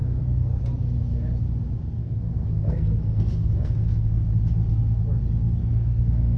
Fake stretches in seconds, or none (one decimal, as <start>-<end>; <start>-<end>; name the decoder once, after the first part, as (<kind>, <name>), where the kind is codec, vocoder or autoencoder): 0.0-0.6 (codec, SNAC); 2.0-4.3; 5.6-6.4